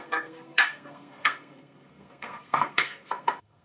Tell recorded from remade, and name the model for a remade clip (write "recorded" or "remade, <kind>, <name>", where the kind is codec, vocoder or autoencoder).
remade, codec, SNAC